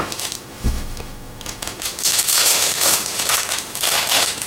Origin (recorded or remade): remade